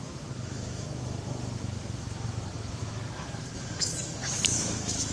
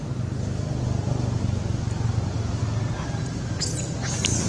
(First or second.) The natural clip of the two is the second